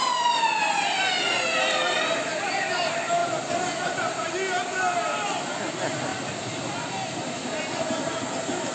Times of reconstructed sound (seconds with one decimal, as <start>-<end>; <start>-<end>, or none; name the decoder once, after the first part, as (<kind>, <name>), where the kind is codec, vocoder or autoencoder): none